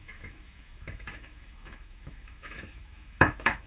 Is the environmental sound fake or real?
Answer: fake